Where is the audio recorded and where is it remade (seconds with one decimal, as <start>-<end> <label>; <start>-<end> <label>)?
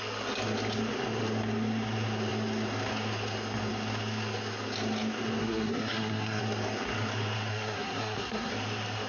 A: 0.0-5.4 recorded; 5.4-6.4 remade; 6.4-7.5 recorded; 7.5-8.5 remade; 8.5-9.1 recorded